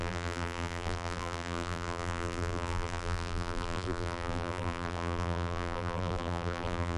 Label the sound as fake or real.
fake